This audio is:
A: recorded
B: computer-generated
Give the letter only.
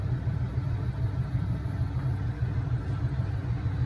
A